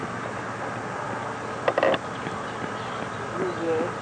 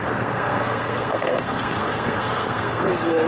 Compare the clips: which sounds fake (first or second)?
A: second